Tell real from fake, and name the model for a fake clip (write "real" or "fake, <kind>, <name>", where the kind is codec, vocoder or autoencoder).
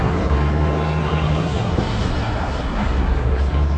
fake, codec, SNAC